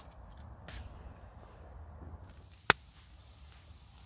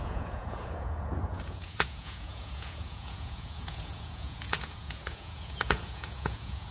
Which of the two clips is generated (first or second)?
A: second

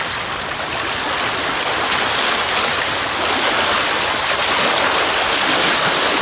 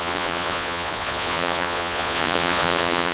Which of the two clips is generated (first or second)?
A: second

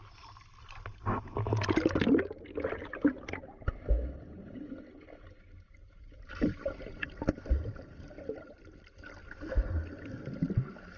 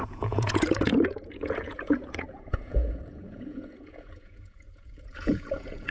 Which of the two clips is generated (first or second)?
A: second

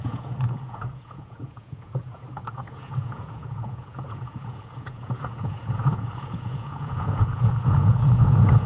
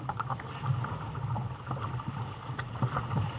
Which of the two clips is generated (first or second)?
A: first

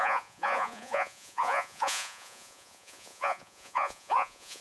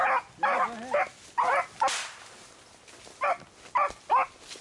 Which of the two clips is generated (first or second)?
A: first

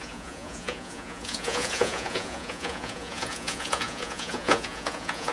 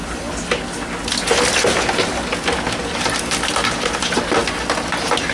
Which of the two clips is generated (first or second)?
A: first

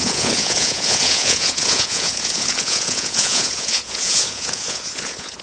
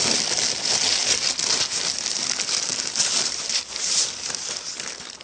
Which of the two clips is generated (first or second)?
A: first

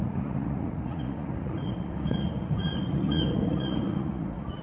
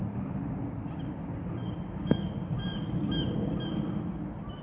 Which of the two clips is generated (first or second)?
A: first